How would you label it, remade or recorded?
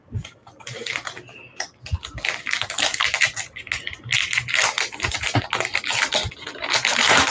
recorded